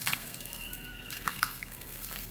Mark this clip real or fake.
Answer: fake